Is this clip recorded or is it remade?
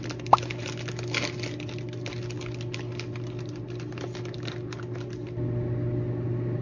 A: recorded